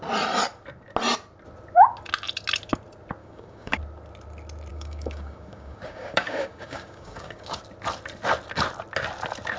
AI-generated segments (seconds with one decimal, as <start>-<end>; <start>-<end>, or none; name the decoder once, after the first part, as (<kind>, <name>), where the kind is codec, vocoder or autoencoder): 3.2-3.8 (codec, DAC); 4.7-7.6

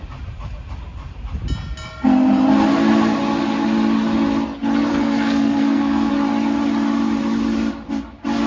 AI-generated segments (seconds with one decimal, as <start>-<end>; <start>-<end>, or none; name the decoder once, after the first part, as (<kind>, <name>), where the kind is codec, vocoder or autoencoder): 4.9-6.1 (codec, SNAC)